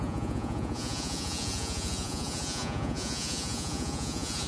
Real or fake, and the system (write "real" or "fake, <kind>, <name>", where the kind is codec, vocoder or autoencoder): fake, vocoder, Vocos